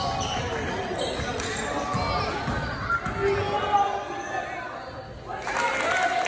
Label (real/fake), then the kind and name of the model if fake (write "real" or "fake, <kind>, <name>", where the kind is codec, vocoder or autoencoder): real